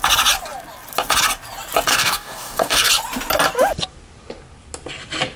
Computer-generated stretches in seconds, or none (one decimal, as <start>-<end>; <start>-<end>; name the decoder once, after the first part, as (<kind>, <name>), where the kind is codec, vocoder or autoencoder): 1.9-2.9 (codec, DAC)